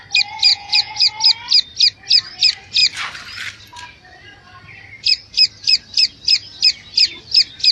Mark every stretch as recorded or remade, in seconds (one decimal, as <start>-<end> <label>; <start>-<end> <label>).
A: 0.0-0.5 recorded; 0.5-1.1 remade; 1.1-7.7 recorded